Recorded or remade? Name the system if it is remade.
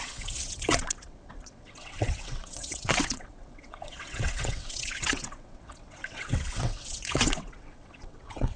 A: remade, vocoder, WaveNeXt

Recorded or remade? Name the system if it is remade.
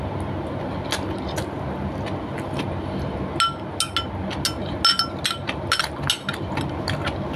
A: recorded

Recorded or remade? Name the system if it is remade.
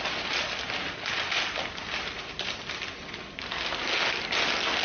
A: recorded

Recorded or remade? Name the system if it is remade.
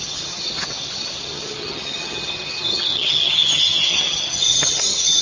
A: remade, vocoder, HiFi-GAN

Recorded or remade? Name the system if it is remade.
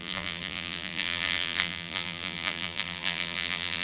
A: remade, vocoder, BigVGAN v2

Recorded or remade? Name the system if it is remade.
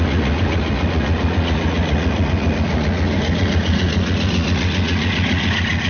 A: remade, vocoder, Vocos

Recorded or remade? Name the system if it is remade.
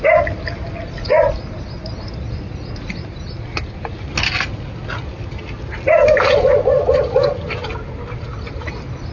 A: recorded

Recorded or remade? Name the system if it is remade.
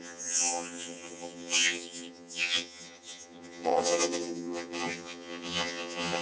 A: remade, vocoder, HiFi-GAN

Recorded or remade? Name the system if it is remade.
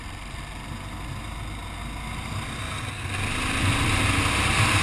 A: recorded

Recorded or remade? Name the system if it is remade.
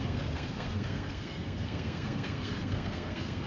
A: remade, codec, SNAC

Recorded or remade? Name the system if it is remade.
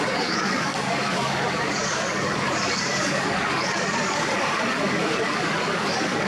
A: remade, codec, DAC